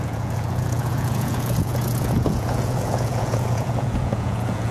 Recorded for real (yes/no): no